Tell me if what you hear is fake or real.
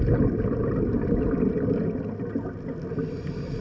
real